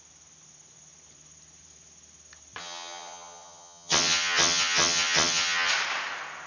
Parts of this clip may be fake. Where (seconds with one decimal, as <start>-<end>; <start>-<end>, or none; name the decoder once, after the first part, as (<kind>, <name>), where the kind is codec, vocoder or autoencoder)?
2.6-5.7 (vocoder, HiFi-GAN)